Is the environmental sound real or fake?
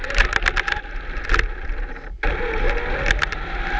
real